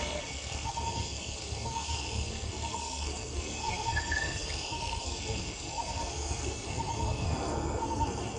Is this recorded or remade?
remade